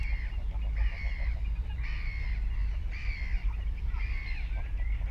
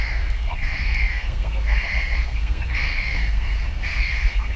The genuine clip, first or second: first